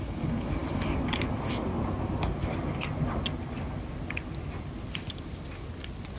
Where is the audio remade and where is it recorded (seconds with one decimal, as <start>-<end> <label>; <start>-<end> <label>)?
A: 0.0-6.2 recorded